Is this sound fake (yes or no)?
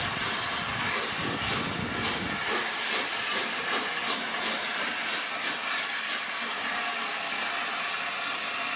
no